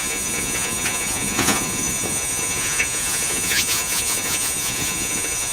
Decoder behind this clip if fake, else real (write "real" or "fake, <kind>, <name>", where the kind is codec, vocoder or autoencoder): fake, vocoder, Vocos